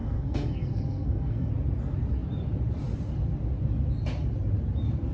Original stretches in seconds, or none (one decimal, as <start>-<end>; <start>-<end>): 1.5-5.1